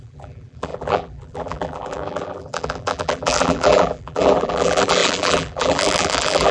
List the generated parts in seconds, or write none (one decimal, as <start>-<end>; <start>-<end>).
0.0-6.5